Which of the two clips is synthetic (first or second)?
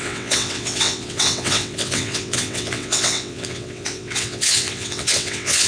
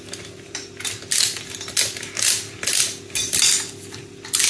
first